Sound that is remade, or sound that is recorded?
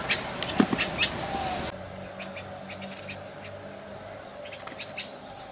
recorded